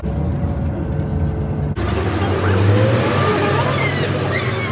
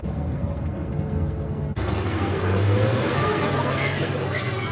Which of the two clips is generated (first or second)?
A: second